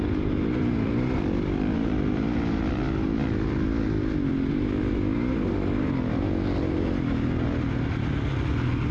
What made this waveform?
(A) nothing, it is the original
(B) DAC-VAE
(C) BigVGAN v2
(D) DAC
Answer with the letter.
A